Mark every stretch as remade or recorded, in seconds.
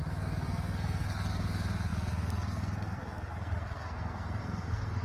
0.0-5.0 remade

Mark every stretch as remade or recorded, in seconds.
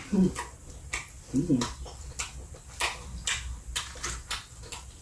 0.0-5.0 recorded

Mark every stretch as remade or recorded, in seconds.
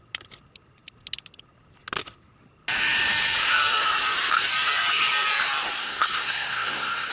0.0-5.8 recorded; 5.8-7.1 remade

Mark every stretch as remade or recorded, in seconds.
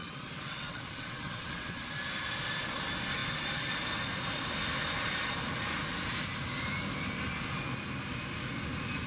0.0-1.9 remade; 1.9-9.1 recorded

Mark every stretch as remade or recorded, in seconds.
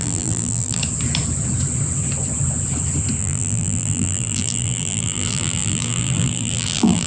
0.0-0.8 remade; 0.8-3.2 recorded; 3.2-7.1 remade